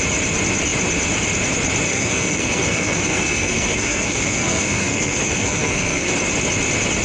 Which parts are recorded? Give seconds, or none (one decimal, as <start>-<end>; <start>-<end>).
0.0-1.9; 6.1-7.0